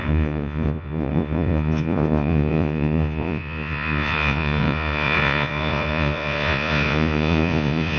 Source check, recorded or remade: remade